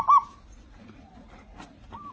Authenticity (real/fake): real